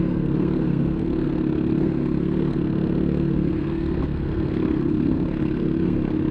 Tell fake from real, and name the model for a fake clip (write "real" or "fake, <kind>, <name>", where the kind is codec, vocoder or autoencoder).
fake, codec, SNAC